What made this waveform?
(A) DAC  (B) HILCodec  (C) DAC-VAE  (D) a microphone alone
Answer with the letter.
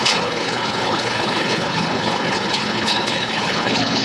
B